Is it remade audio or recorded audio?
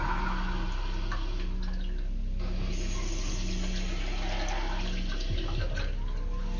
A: recorded